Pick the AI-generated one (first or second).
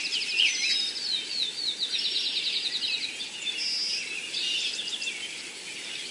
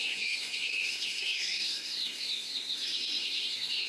second